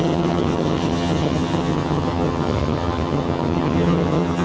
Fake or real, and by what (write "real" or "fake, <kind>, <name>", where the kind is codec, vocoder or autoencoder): fake, vocoder, HiFi-GAN